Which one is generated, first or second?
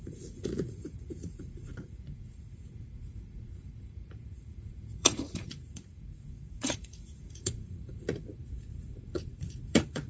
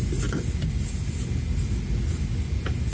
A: first